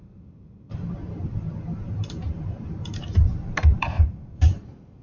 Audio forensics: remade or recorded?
remade